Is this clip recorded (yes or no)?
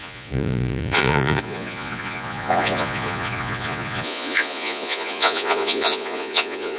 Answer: no